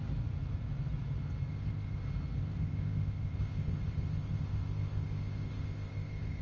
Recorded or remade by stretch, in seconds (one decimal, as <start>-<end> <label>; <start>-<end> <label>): 0.0-1.5 recorded; 1.5-2.0 remade; 2.0-2.4 recorded; 2.4-6.4 remade